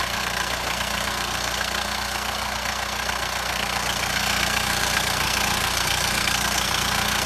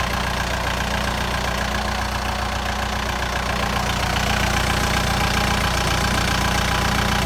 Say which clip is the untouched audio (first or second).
second